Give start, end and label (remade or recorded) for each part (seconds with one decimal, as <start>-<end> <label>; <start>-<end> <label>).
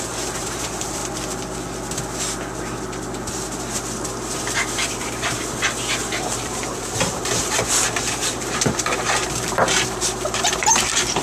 0.0-1.0 remade; 1.0-4.2 recorded; 4.2-11.2 remade